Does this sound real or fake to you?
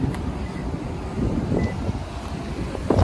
real